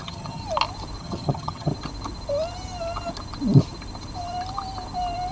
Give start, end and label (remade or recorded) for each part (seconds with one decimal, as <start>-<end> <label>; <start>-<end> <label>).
0.0-0.4 remade; 0.4-1.0 recorded; 1.0-1.7 remade; 1.7-5.3 recorded

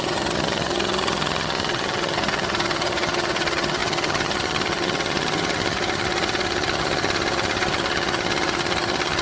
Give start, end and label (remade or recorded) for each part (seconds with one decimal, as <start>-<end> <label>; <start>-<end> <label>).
0.0-9.2 remade